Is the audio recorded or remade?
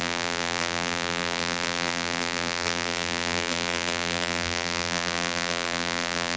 remade